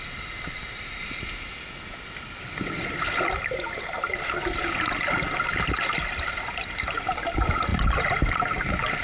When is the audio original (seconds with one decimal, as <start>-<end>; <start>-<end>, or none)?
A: 0.0-9.0